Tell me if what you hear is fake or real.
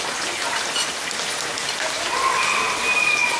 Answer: real